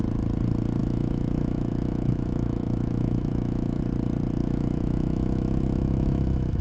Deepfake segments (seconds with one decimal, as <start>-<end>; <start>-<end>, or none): 0.8-3.8; 4.4-6.6